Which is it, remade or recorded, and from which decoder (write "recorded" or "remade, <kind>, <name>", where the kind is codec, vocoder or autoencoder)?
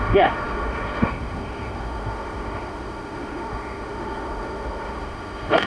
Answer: remade, autoencoder, DAC-VAE